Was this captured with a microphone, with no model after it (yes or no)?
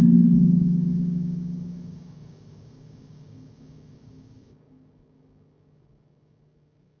no